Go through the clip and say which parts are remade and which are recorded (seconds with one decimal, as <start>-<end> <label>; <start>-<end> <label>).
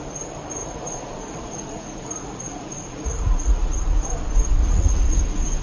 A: 0.0-0.6 recorded; 0.6-4.0 remade; 4.0-4.6 recorded; 4.6-5.6 remade